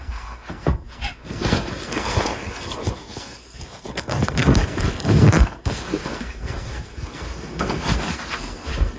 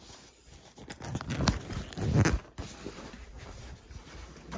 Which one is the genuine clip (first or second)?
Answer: second